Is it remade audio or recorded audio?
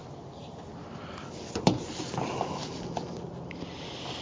recorded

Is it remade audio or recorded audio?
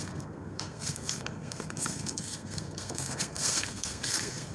remade